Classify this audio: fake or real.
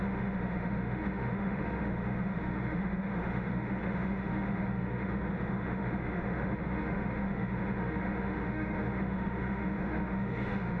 fake